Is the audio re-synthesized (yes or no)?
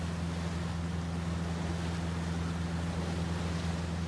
no